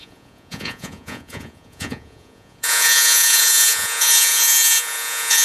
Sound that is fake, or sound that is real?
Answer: fake